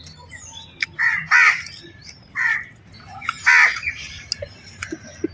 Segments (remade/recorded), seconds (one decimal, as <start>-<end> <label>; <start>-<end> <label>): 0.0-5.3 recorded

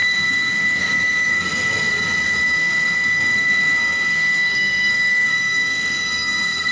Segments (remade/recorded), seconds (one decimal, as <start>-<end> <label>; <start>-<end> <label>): 0.0-0.8 remade; 0.8-1.3 recorded; 1.3-1.9 remade; 1.9-2.6 recorded; 2.6-6.7 remade

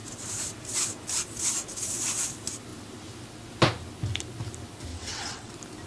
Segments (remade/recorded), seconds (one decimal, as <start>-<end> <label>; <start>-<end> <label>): 0.0-4.9 recorded; 4.9-5.5 remade; 5.5-5.9 recorded

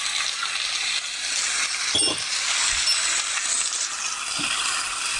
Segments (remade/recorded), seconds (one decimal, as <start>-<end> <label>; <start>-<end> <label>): 0.0-5.2 recorded

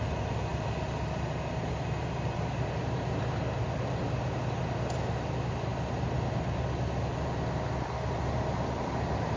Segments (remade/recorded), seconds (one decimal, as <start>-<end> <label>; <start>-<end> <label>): 0.0-9.4 recorded

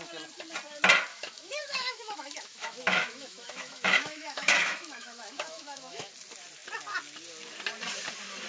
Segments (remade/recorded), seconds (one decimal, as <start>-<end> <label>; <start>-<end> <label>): 0.0-1.1 recorded; 1.1-6.1 remade; 6.1-8.5 recorded

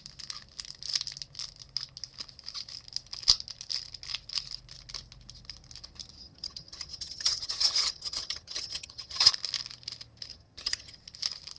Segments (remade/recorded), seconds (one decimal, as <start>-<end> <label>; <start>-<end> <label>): 0.0-6.2 recorded; 6.2-9.3 remade; 9.3-10.3 recorded; 10.3-11.0 remade; 11.0-11.6 recorded

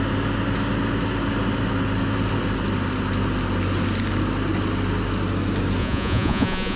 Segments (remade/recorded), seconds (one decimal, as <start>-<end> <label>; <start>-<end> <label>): 0.0-5.8 recorded; 5.8-6.8 remade